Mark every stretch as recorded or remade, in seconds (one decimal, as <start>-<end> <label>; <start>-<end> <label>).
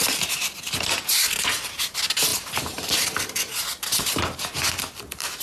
0.0-5.4 recorded